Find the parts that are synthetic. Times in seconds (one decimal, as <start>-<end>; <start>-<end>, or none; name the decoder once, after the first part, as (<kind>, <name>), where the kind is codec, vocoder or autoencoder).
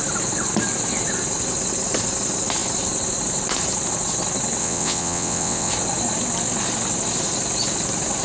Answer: 4.6-5.7 (vocoder, WaveNeXt)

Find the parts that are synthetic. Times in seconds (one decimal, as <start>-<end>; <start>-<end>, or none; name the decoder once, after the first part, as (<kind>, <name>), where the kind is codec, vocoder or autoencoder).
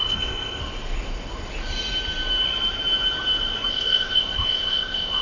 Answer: 0.0-0.6 (codec, ZipCodec); 3.7-5.2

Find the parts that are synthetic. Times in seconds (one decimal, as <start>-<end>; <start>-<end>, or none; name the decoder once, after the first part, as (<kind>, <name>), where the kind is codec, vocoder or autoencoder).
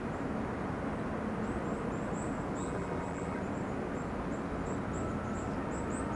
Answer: 2.6-3.4 (vocoder, BigVGAN v2)